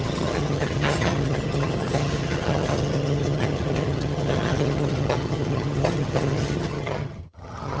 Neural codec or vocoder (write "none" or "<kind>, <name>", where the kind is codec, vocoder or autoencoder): vocoder, HiFi-GAN